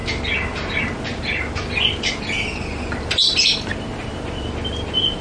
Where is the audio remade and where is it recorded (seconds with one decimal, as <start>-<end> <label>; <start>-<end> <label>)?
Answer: 0.0-5.2 recorded